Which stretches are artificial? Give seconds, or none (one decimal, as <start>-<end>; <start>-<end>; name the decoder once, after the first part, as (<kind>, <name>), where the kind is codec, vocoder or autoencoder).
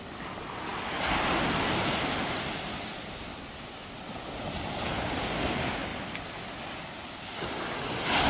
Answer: none